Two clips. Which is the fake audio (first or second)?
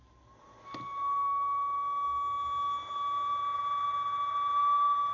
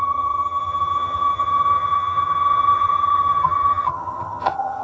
second